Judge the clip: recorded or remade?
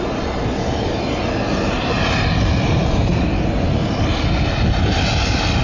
recorded